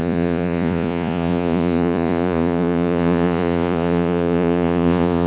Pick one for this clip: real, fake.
fake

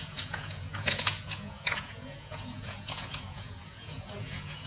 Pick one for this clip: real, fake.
fake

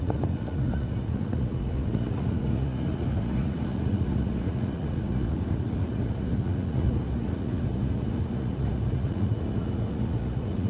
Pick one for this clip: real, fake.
fake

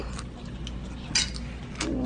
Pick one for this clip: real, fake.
real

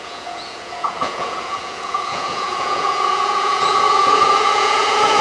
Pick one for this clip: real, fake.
fake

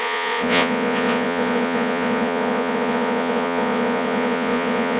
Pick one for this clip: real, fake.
fake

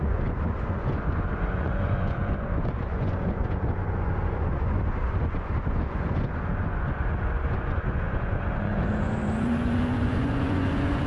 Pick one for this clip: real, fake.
fake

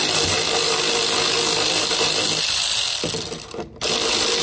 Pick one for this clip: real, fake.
real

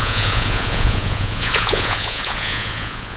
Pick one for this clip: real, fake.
fake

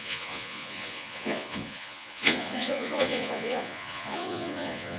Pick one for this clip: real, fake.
fake